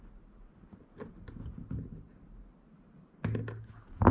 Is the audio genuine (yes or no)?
yes